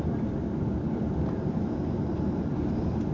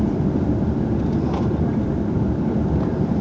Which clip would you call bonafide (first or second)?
first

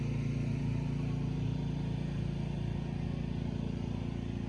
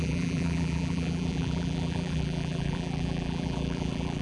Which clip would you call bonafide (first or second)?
first